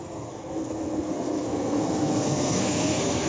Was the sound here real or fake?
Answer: fake